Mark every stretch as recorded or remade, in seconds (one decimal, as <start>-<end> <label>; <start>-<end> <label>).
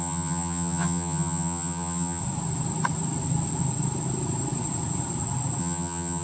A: 0.0-2.2 remade; 2.2-5.6 recorded; 5.6-6.2 remade